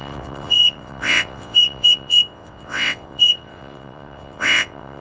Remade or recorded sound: remade